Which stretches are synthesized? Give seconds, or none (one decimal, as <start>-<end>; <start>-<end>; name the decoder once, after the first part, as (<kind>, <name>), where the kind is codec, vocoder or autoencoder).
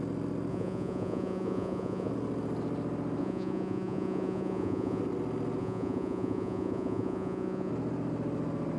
0.5-2.1 (vocoder, Vocos); 3.2-5.0; 5.6-7.7